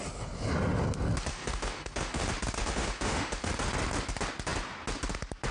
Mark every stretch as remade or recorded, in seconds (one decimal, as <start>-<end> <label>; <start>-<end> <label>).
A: 0.0-1.3 recorded; 1.3-2.2 remade; 2.2-2.6 recorded; 2.6-3.5 remade; 3.5-5.5 recorded